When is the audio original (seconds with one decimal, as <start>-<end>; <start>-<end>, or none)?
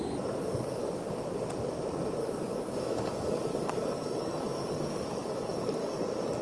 0.0-0.4; 0.9-2.2; 6.0-6.4